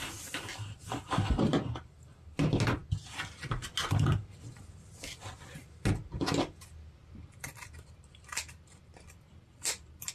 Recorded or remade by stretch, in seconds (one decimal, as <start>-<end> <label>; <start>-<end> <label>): 0.0-7.0 recorded; 7.0-10.1 remade